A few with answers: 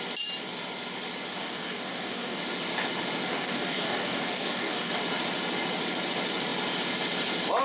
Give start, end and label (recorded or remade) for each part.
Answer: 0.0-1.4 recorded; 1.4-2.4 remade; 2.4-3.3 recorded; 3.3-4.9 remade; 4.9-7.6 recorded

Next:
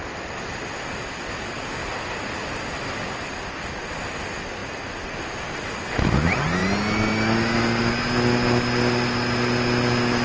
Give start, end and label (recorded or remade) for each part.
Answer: 0.0-10.2 recorded

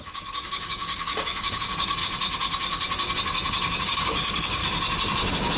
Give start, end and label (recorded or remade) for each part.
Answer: 0.0-2.0 remade; 2.0-3.8 recorded; 3.8-4.6 remade; 4.6-5.6 recorded